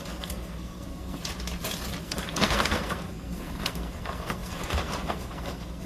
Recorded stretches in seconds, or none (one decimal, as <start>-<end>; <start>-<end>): 1.2-2.0